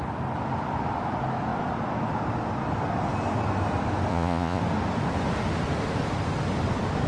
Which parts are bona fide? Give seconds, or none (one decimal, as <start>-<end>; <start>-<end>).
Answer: 0.0-4.1; 4.6-7.1